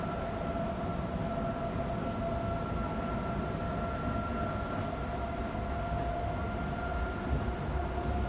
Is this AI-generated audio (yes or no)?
no